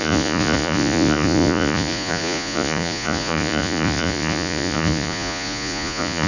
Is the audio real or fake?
fake